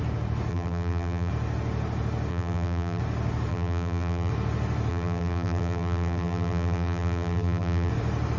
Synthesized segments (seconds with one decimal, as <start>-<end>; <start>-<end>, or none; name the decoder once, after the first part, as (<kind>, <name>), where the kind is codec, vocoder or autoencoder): 0.5-1.3 (vocoder, BigVGAN v2); 2.3-3.0; 3.5-4.3; 4.9-7.9

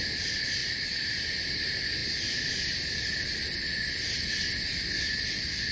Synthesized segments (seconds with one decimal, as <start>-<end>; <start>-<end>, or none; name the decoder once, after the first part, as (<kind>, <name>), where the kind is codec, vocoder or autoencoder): 0.6-1.1 (vocoder, BigVGAN v2)

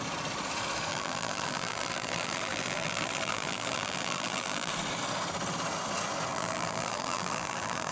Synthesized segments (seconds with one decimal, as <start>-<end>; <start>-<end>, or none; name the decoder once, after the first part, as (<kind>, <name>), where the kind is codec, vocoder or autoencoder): 0.9-4.7 (vocoder, BigVGAN v2); 6.3-7.9

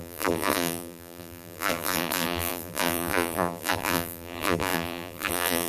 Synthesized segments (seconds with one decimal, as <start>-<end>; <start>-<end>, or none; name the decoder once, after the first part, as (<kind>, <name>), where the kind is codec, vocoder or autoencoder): 0.0-5.7 (vocoder, BigVGAN v2)

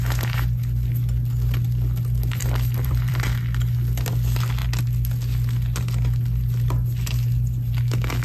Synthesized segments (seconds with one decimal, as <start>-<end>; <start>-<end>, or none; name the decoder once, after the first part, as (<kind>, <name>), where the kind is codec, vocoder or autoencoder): 2.4-3.2 (vocoder, BigVGAN v2)